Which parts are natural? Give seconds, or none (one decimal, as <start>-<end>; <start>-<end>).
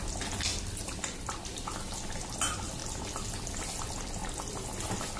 0.0-0.5; 1.2-2.8; 3.5-5.2